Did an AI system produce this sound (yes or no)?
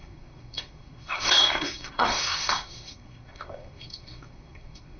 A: yes